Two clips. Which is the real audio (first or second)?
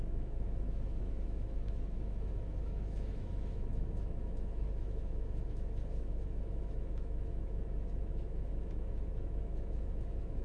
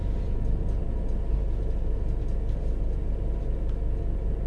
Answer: second